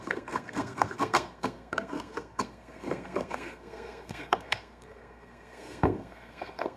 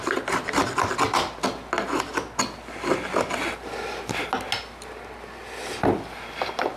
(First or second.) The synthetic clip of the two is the first